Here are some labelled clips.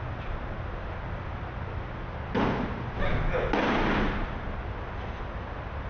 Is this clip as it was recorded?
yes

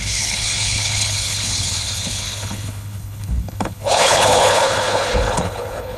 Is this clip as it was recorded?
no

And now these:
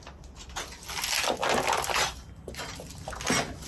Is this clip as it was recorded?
yes